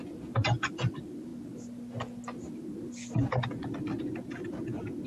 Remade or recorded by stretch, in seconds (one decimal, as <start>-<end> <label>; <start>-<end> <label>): 0.0-5.1 recorded